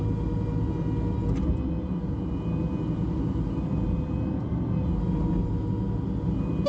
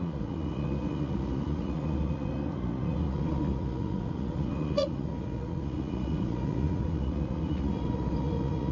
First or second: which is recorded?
first